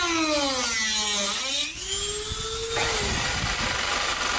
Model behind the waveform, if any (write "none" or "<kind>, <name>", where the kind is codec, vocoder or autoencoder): none